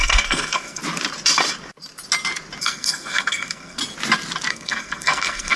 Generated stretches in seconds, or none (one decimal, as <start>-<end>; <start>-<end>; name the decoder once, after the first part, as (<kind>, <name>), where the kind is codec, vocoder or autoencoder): 0.0-0.8 (codec, SNAC); 2.6-3.8; 4.5-5.6